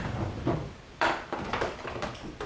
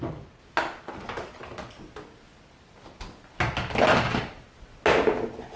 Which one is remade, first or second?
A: first